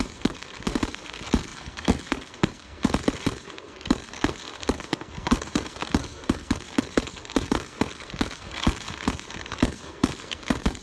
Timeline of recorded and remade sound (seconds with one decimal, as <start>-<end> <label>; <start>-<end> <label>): 0.0-10.8 remade

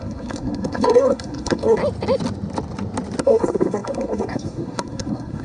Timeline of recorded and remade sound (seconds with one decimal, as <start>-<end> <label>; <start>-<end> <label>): 0.0-1.8 remade; 1.8-3.2 recorded; 3.2-5.4 remade